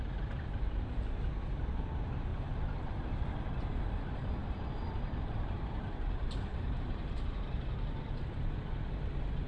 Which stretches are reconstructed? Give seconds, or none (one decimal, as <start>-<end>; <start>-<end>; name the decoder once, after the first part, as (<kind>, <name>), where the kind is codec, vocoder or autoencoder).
2.3-3.2 (vocoder, BigVGAN v2); 4.4-8.6